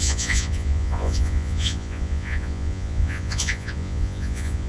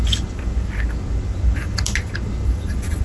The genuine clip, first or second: second